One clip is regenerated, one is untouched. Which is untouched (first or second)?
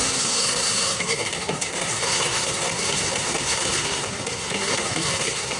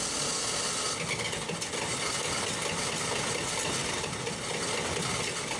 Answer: second